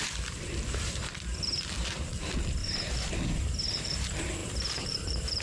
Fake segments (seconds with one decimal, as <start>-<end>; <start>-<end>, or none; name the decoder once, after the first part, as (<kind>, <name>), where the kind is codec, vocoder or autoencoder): 0.0-1.0 (vocoder, BigVGAN v2); 1.7-2.6; 3.1-5.4